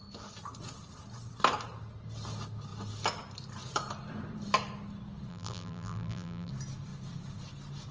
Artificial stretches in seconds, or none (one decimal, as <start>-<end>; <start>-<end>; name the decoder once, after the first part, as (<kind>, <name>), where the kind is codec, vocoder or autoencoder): 5.3-6.5 (vocoder, BigVGAN v2)